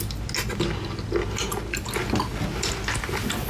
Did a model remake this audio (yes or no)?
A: no